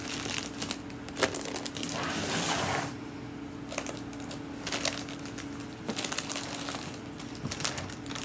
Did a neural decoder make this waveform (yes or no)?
no